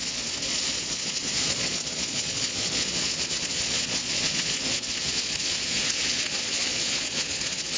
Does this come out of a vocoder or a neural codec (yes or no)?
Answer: yes